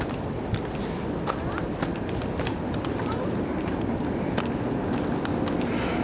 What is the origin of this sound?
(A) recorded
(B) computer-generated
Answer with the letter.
A